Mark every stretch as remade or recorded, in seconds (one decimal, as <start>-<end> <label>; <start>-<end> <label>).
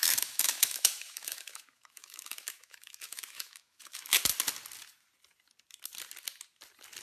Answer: 0.0-4.2 remade; 4.2-7.0 recorded